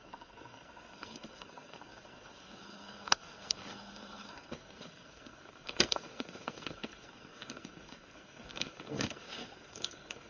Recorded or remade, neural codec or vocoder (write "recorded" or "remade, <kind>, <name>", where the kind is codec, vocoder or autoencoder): remade, codec, SNAC